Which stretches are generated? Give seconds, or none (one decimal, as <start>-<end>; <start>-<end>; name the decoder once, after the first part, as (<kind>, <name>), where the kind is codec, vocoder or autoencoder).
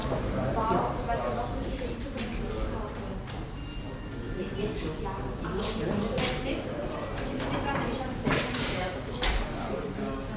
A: 6.8-9.4 (vocoder, BigVGAN v2)